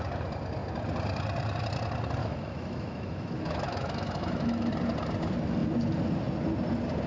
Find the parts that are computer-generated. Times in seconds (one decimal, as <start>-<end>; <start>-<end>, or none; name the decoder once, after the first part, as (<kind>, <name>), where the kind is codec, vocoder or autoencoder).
2.2-4.7 (autoencoder, DAC-VAE)